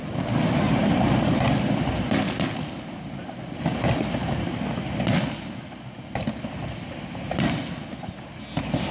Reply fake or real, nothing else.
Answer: real